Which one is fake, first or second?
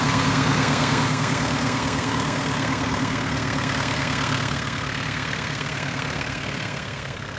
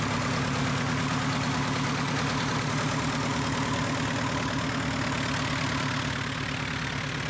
first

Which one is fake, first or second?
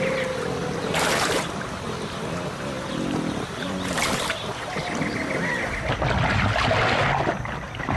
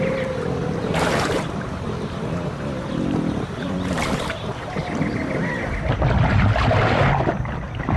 second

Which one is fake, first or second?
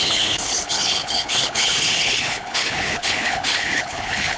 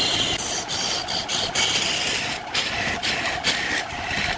first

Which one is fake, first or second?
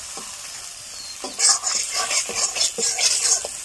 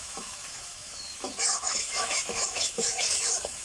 second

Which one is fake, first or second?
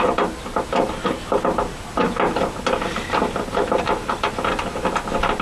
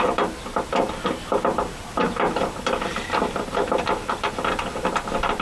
second